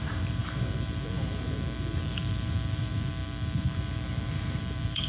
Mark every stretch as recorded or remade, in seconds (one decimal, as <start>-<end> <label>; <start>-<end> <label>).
0.0-5.1 remade